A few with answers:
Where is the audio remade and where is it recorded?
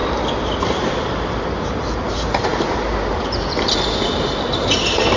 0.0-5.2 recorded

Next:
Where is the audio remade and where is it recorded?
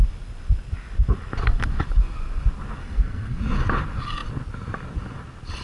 0.0-2.8 recorded; 2.8-3.4 remade; 3.4-5.6 recorded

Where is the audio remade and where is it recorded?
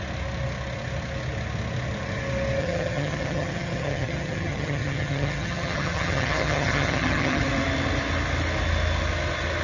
0.0-2.6 recorded; 2.6-7.4 remade; 7.4-9.6 recorded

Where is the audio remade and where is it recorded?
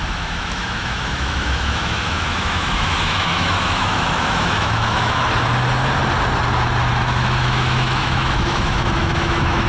0.0-5.2 remade; 5.2-6.9 recorded; 6.9-9.7 remade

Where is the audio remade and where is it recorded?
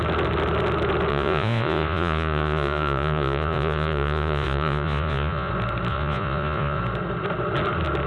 0.0-1.1 recorded; 1.1-5.5 remade; 5.5-5.9 recorded; 5.9-6.8 remade; 6.8-8.1 recorded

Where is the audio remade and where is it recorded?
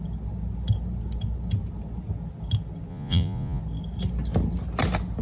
0.0-2.9 recorded; 2.9-3.6 remade; 3.6-5.2 recorded